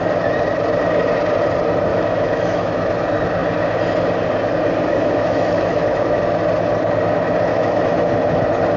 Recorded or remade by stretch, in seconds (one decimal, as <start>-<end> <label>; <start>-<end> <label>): 0.0-1.9 recorded; 1.9-2.7 remade; 2.7-4.9 recorded; 4.9-6.2 remade; 6.2-7.5 recorded; 7.5-8.1 remade; 8.1-8.8 recorded